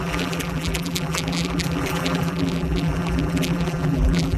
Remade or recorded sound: remade